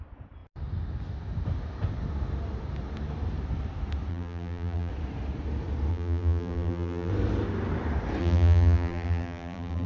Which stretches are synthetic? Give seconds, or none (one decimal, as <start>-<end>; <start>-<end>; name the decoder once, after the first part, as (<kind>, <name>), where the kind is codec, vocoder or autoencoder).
4.1-4.9 (vocoder, BigVGAN v2); 5.9-7.1; 8.2-9.9

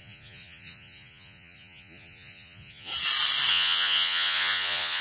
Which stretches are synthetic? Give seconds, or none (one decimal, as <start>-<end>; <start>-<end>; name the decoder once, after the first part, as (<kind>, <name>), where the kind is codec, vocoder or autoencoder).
0.0-2.9 (vocoder, Vocos); 3.5-5.0

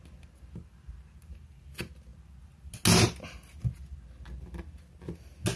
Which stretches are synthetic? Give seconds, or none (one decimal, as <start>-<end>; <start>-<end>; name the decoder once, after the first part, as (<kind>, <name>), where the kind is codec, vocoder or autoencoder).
none

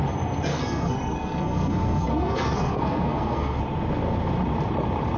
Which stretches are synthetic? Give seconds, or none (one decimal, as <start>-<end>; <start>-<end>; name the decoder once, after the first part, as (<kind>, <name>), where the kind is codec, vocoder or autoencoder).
0.5-3.6 (codec, SNAC)

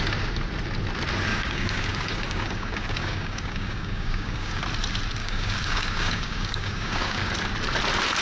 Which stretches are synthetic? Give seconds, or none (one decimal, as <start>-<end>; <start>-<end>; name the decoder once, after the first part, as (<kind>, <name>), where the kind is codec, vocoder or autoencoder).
1.3-4.6 (codec, DAC); 5.2-7.3

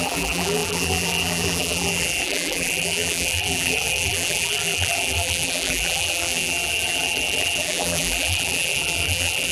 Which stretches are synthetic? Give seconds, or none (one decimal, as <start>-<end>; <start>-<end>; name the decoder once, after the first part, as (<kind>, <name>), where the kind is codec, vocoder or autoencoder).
0.0-9.5 (vocoder, BigVGAN v2)

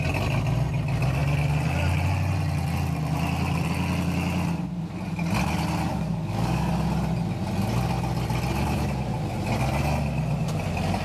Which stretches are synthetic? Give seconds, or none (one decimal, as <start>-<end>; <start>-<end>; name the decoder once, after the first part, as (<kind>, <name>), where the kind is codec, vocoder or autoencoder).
5.9-6.7 (codec, DAC)

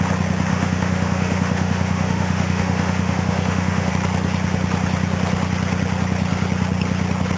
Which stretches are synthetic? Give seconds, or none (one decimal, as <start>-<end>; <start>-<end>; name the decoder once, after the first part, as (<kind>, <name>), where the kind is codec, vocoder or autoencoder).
0.5-3.9 (autoencoder, DAC-VAE)